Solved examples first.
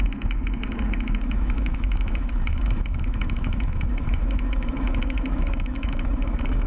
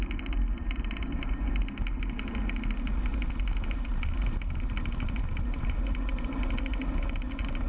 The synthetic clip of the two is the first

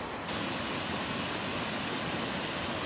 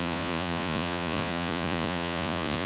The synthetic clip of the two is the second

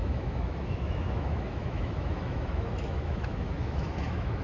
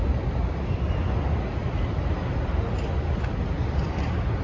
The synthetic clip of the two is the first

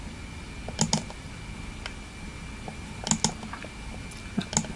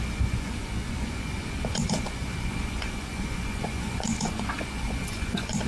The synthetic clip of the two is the second